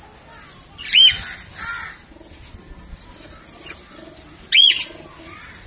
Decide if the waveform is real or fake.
real